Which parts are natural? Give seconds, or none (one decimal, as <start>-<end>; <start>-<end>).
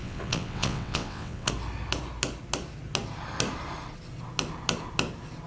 1.5-5.5